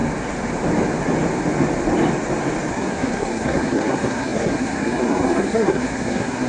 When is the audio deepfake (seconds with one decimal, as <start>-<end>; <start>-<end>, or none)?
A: 2.7-6.5